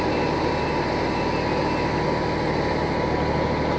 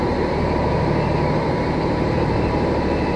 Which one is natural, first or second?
first